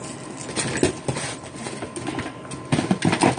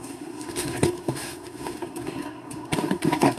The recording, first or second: first